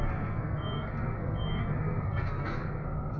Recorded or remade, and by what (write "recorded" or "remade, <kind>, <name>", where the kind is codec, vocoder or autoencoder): remade, codec, SNAC